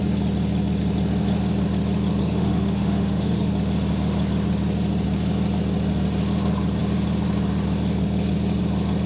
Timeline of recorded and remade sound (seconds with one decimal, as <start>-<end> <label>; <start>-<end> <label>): 0.0-2.2 recorded; 2.2-3.5 remade; 3.5-9.1 recorded